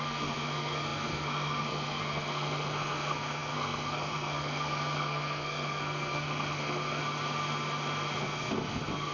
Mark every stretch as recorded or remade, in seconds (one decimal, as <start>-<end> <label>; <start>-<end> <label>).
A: 0.0-7.0 remade; 7.0-8.2 recorded; 8.2-9.1 remade